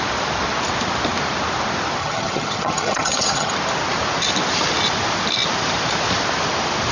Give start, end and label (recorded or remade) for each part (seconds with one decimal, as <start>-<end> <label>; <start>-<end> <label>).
0.0-2.0 recorded; 2.0-3.5 remade; 3.5-6.9 recorded